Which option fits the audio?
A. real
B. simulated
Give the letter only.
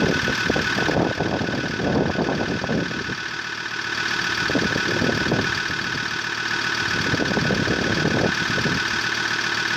A